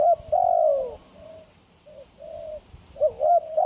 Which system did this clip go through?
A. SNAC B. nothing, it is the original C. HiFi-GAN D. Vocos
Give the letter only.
B